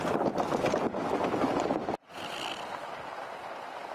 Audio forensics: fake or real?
real